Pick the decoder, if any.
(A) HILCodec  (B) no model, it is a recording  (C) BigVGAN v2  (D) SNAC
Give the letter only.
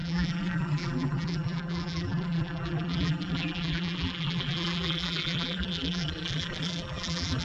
C